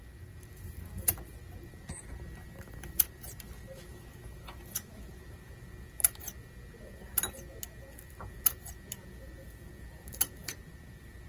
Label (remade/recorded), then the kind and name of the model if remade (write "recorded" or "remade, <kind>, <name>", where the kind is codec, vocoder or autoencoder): recorded